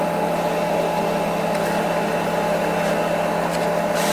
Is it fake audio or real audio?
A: real